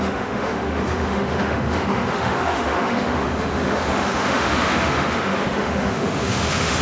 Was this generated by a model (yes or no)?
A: yes